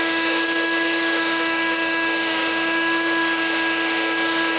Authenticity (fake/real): fake